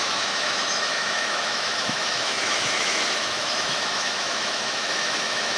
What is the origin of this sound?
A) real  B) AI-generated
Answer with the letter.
B